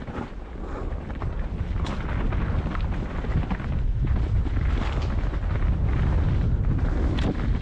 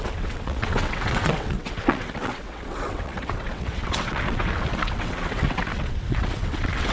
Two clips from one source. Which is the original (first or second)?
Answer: first